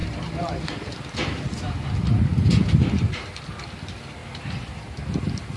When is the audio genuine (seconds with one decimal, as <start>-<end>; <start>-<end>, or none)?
3.4-4.2; 5.0-5.6